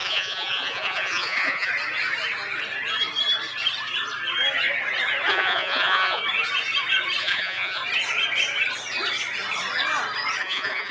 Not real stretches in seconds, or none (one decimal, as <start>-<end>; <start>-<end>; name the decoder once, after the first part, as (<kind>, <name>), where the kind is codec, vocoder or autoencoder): 0.0-1.7 (vocoder, Vocos); 5.3-6.2; 7.2-7.8; 10.4-10.9